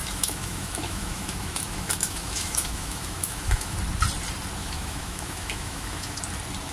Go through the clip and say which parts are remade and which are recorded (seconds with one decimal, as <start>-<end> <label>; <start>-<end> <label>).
0.0-3.8 remade; 3.8-4.6 recorded; 4.6-6.2 remade; 6.2-6.7 recorded